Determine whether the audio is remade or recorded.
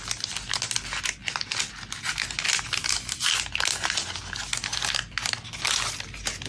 recorded